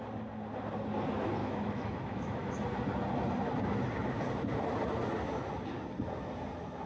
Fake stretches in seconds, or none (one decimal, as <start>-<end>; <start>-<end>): 1.4-2.5